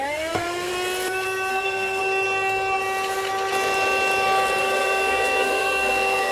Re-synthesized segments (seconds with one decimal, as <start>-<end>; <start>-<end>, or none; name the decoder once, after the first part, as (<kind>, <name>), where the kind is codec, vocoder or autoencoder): 0.0-0.7 (codec, SNAC); 1.5-2.0; 4.6-6.3